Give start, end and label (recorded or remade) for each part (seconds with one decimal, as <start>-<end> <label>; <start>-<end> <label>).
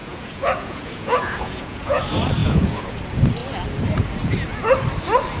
0.0-2.0 remade; 2.0-2.4 recorded; 2.4-3.0 remade; 3.0-5.4 recorded